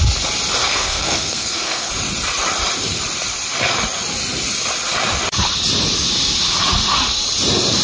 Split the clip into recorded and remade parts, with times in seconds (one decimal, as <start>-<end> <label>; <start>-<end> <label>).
0.0-0.6 recorded; 0.6-1.9 remade; 1.9-7.8 recorded